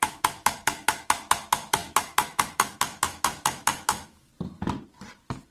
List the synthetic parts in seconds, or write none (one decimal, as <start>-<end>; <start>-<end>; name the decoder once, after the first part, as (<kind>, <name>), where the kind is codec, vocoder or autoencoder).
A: 0.0-4.3 (autoencoder, DAC-VAE)